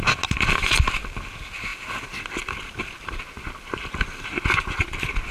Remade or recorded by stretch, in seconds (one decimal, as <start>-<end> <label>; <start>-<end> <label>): 0.0-5.3 recorded